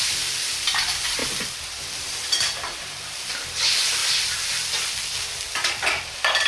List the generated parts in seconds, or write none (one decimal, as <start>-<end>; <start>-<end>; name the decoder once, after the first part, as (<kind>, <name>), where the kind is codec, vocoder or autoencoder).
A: 0.0-1.2 (vocoder, BigVGAN v2); 1.9-4.0; 5.9-6.5